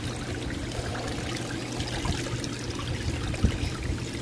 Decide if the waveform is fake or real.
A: real